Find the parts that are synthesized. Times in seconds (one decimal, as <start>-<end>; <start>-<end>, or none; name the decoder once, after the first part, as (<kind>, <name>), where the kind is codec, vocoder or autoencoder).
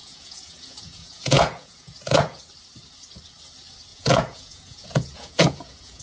0.0-2.4 (vocoder, Vocos); 3.9-6.0